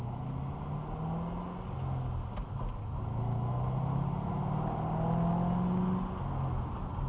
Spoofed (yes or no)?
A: no